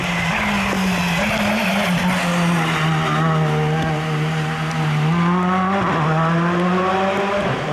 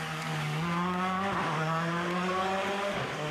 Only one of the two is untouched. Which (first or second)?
first